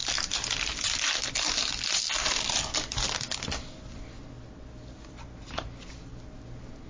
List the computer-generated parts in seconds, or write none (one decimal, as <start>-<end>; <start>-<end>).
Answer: none